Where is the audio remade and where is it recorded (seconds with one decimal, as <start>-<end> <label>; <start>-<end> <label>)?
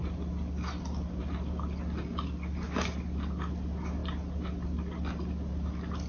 0.0-1.2 remade; 1.2-4.0 recorded; 4.0-6.1 remade